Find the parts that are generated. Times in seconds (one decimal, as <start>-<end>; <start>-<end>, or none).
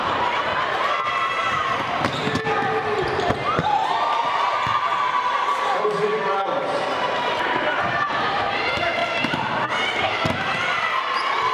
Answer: 0.0-9.0